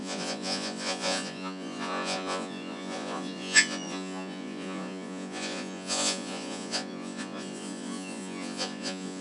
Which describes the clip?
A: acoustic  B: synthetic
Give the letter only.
B